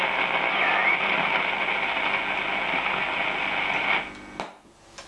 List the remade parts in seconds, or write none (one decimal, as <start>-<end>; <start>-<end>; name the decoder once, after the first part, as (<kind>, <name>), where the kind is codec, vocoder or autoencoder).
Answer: none